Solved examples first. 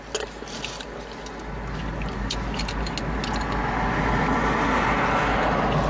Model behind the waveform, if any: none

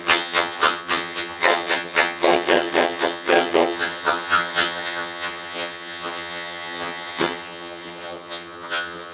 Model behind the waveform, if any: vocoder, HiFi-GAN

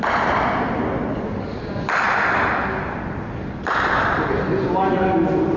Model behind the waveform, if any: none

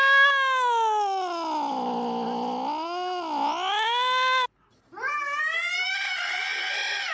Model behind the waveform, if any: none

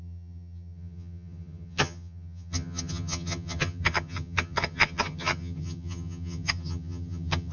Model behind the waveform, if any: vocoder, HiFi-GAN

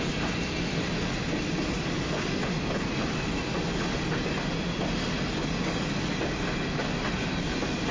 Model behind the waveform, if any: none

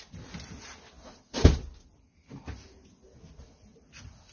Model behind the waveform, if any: none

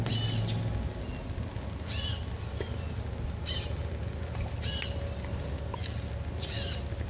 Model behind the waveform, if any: none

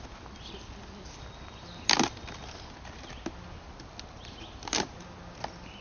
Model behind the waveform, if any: none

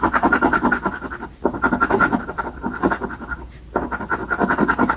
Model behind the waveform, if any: none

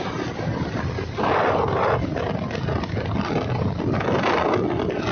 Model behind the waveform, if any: none